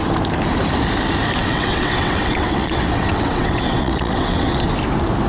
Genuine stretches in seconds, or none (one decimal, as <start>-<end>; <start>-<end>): 0.0-1.4; 4.6-5.3